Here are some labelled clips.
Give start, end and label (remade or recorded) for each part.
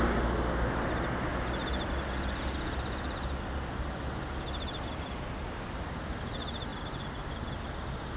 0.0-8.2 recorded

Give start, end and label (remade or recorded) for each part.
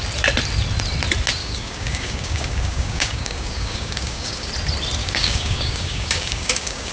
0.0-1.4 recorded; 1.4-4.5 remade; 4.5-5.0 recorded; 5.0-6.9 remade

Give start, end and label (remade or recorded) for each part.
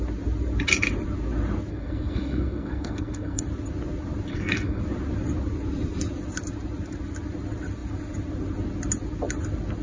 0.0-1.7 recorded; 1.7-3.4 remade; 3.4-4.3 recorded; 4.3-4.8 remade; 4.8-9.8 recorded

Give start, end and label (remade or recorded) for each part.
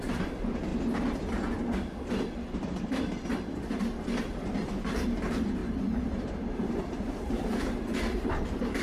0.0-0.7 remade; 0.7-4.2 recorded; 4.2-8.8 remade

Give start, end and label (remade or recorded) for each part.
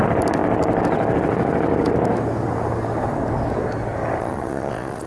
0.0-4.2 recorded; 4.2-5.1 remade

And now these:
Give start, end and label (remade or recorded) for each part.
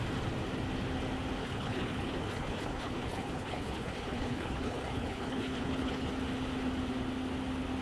0.0-1.4 recorded; 1.4-6.1 remade; 6.1-7.8 recorded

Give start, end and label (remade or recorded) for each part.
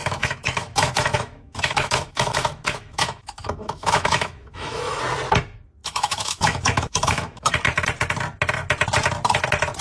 0.0-5.0 remade; 5.0-5.8 recorded; 5.8-7.5 remade; 7.5-9.8 recorded